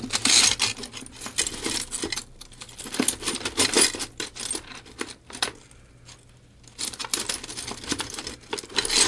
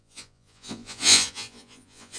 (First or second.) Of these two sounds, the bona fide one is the first